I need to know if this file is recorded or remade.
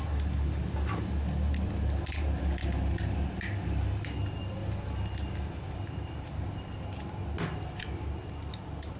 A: recorded